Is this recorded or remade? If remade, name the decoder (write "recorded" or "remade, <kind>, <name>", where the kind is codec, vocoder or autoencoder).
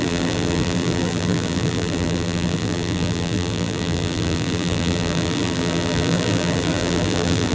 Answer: remade, vocoder, BigVGAN v2